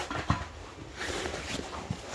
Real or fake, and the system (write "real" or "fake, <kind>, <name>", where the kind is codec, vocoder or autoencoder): real